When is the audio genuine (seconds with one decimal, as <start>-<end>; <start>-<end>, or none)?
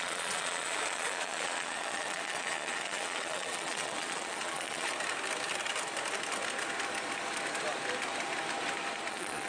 4.9-9.1